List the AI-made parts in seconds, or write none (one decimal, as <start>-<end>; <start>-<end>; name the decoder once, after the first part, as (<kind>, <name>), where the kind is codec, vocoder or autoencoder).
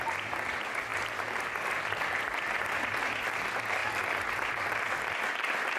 none